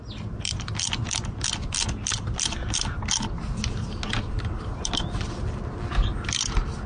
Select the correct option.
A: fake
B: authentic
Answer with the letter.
B